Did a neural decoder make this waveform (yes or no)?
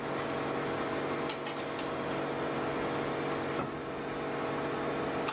no